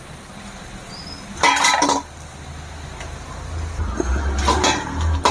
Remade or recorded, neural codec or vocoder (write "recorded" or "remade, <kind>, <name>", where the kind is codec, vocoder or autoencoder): recorded